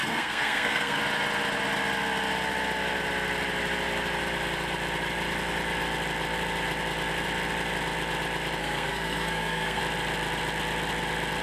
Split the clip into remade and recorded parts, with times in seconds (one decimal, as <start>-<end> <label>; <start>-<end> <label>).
0.0-1.0 remade; 1.0-8.6 recorded; 8.6-9.8 remade; 9.8-11.4 recorded